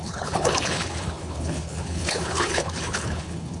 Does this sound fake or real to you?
fake